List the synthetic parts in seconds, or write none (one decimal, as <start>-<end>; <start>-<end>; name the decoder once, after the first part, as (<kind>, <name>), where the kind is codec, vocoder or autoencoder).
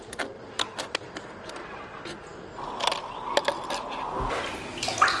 none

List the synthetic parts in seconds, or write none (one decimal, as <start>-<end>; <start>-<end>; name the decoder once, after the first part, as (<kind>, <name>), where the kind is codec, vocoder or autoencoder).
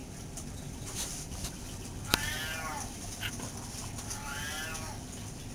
0.0-3.3 (vocoder, BigVGAN v2)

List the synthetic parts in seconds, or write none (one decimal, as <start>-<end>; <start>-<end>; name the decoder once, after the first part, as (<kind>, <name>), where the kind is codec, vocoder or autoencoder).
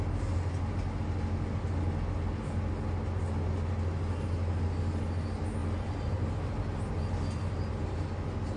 5.6-8.0 (vocoder, BigVGAN v2)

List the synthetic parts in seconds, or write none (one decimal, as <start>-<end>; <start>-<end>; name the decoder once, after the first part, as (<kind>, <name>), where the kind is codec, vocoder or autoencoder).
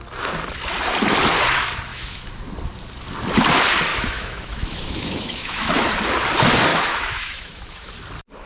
1.9-2.4 (autoencoder, DAC-VAE); 3.9-5.8; 6.7-7.9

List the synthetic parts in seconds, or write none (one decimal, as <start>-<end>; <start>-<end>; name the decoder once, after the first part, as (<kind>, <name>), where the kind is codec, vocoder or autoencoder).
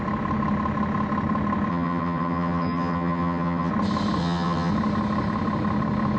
1.7-3.7 (vocoder, HiFi-GAN); 4.2-4.7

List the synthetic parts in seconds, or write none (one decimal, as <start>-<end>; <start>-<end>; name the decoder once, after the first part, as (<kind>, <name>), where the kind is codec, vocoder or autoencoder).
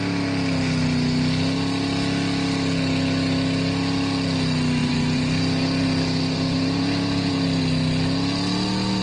4.8-7.3 (vocoder, BigVGAN v2)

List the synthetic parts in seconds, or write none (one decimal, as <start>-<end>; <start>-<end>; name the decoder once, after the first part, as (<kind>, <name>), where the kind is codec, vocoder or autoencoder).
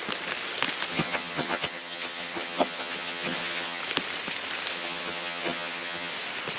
0.9-3.8 (vocoder, HiFi-GAN); 4.7-6.1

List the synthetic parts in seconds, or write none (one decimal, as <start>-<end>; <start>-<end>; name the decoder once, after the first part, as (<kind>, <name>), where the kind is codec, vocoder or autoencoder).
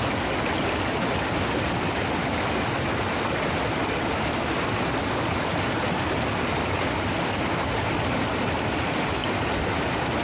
5.5-6.3 (vocoder, BigVGAN v2); 9.2-10.2